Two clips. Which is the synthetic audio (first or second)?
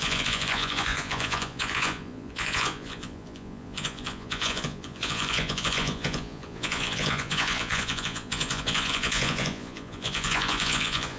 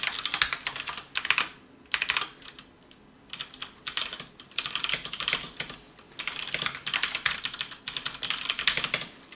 first